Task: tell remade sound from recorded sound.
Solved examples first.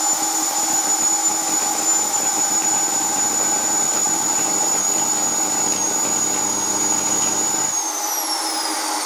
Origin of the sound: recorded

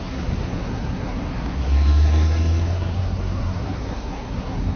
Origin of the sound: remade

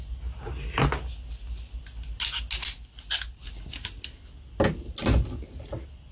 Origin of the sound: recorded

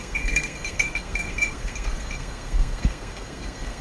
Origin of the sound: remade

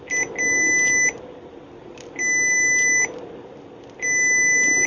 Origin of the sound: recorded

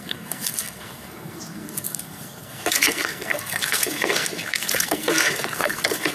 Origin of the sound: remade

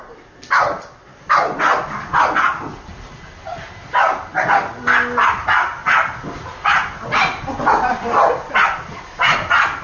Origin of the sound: recorded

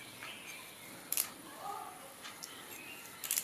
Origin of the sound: recorded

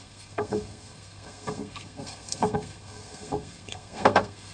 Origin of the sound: remade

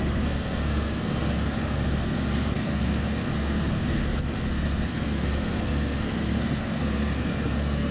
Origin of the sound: remade